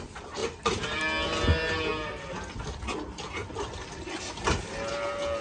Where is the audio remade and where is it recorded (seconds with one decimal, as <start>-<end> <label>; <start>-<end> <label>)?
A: 0.0-0.4 recorded; 0.4-1.0 remade; 1.0-3.4 recorded; 3.4-4.9 remade; 4.9-5.4 recorded